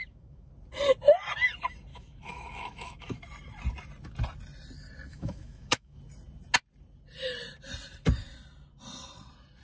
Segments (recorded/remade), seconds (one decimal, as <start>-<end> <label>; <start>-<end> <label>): 0.0-0.5 remade; 0.5-1.9 recorded; 1.9-3.2 remade; 3.2-5.1 recorded; 5.1-6.0 remade; 6.0-9.6 recorded